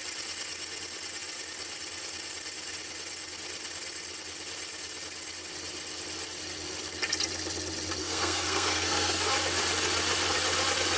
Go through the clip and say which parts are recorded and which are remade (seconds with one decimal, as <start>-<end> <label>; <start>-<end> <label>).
0.0-8.0 recorded; 8.0-9.3 remade; 9.3-11.0 recorded